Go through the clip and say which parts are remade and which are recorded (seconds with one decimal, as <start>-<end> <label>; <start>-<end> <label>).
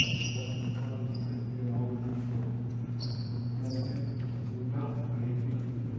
0.0-2.1 remade; 2.1-2.7 recorded; 2.7-6.0 remade